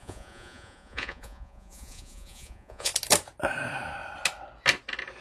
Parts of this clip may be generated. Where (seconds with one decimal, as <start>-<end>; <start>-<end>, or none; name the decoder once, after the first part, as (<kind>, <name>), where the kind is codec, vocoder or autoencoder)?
0.0-2.9 (vocoder, Vocos)